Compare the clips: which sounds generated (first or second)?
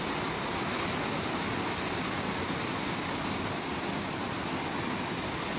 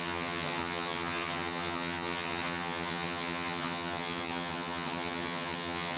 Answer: second